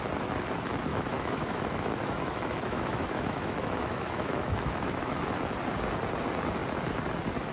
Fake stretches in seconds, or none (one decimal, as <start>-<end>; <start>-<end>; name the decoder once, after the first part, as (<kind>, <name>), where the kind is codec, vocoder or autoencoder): 0.9-5.2 (autoencoder, DAC-VAE)